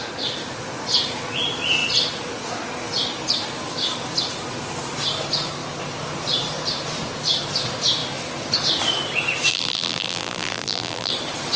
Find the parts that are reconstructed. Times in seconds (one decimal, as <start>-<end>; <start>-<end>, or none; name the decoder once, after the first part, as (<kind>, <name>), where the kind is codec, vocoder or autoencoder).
9.5-11.1 (vocoder, BigVGAN v2)